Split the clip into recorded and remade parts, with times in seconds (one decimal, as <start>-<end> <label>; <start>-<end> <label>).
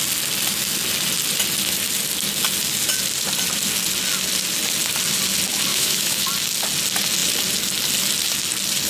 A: 0.0-5.7 recorded; 5.7-6.2 remade; 6.2-8.9 recorded